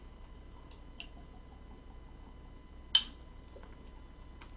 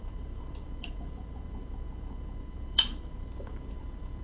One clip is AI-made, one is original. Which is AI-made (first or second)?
second